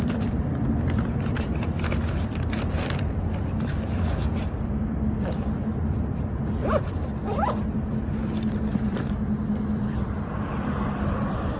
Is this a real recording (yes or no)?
no